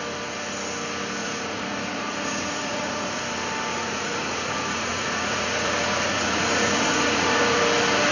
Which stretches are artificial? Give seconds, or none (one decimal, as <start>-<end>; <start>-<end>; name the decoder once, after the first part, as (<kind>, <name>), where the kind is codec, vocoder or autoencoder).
1.2-3.2 (vocoder, Vocos); 3.7-7.6